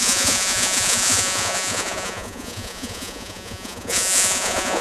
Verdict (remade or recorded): remade